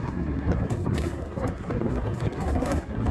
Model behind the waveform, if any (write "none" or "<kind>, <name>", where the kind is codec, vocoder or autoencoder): codec, SNAC